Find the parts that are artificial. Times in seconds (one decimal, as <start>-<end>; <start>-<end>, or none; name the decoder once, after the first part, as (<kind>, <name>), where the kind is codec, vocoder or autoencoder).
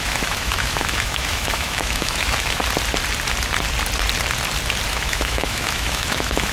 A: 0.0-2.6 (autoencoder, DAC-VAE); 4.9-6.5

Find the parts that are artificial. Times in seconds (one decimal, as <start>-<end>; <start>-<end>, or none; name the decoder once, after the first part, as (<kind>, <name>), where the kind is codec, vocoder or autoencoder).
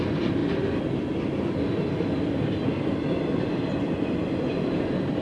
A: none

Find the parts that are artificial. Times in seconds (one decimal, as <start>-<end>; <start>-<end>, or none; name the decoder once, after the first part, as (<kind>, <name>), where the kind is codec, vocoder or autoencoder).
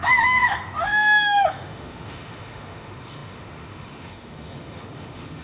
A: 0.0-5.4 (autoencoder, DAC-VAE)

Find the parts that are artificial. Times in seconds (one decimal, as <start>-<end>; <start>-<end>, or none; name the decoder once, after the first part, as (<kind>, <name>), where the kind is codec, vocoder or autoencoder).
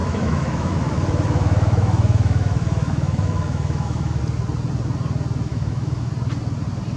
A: 0.0-4.2 (autoencoder, DAC-VAE); 5.5-6.1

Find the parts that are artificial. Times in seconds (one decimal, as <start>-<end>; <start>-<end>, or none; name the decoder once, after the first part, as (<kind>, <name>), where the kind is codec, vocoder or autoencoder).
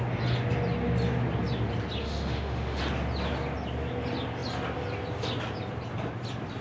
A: 2.0-2.8 (autoencoder, DAC-VAE)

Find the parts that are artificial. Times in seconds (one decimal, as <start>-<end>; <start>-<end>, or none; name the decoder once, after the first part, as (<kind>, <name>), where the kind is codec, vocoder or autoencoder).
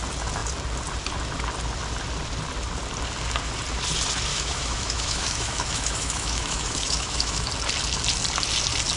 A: 4.3-7.5 (autoencoder, DAC-VAE)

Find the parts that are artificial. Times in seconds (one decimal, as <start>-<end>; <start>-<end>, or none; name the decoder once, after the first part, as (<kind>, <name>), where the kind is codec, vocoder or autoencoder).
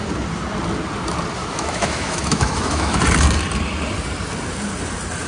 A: 1.4-3.0 (autoencoder, DAC-VAE)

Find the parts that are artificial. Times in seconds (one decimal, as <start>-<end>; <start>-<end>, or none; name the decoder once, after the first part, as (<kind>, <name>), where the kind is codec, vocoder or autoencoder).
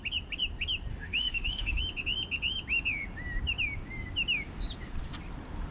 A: 0.9-1.8 (autoencoder, DAC-VAE)